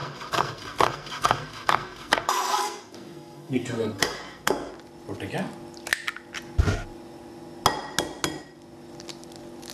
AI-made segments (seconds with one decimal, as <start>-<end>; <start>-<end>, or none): 0.0-4.7